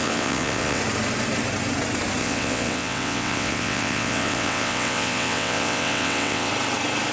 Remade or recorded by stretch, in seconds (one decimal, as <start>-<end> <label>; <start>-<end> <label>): 0.0-0.8 remade; 0.8-2.2 recorded; 2.2-6.5 remade; 6.5-7.1 recorded